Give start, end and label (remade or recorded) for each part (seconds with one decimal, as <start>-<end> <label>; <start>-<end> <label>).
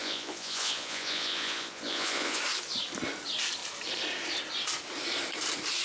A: 0.0-2.4 remade; 2.4-5.8 recorded